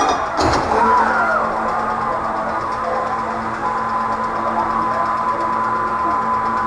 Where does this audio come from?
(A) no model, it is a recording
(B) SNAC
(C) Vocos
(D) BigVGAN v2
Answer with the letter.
A